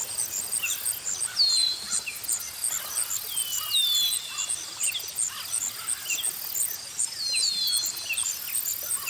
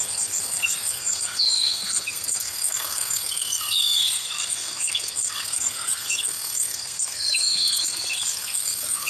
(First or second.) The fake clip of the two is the second